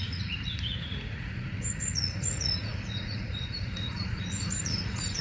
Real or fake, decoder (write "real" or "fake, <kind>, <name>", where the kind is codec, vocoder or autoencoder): fake, vocoder, Vocos